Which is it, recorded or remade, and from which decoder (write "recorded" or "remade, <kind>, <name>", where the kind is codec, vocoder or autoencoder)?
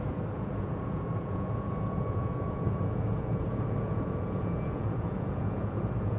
remade, vocoder, Vocos